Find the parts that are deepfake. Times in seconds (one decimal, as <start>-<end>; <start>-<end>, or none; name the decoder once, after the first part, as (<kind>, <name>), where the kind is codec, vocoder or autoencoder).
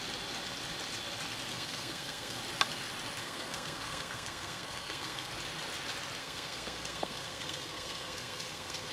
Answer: 1.5-2.4 (codec, SNAC); 3.2-5.3; 6.2-8.9